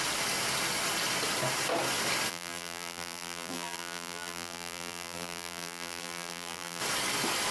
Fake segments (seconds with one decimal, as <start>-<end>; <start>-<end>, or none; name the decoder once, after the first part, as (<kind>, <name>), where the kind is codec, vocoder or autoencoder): 2.3-6.8 (vocoder, BigVGAN v2)